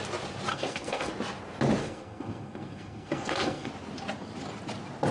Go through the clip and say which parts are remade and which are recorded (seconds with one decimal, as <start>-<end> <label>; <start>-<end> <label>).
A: 0.0-0.5 recorded; 0.5-1.1 remade; 1.1-1.8 recorded; 1.8-3.7 remade; 3.7-5.1 recorded